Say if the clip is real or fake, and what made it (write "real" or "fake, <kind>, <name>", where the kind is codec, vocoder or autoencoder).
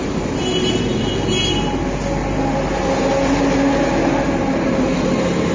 real